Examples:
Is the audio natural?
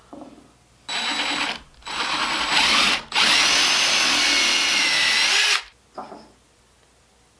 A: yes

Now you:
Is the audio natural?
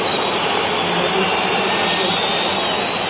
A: yes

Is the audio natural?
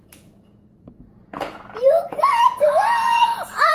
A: no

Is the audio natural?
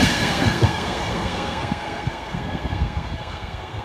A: no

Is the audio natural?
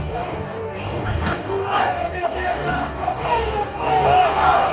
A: no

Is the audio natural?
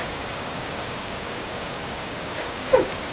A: no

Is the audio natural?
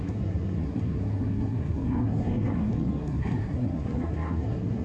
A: no